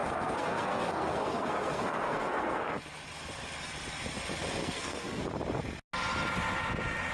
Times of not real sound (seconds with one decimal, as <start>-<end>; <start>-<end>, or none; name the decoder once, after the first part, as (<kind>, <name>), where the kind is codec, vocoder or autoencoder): 0.0-2.8 (codec, SNAC); 4.6-5.2